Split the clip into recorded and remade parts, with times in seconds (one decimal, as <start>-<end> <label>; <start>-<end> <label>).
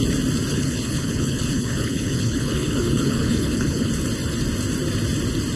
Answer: 0.0-0.5 recorded; 0.5-3.9 remade; 3.9-5.6 recorded